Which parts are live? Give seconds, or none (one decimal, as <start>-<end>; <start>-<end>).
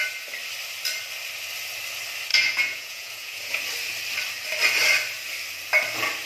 0.0-2.3; 3.6-6.3